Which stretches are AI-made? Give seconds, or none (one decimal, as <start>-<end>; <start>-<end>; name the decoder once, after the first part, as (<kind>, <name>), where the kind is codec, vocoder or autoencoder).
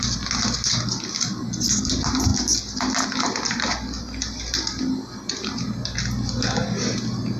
none